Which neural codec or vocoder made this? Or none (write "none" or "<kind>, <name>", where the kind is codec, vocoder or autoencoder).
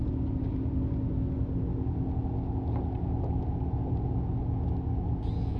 none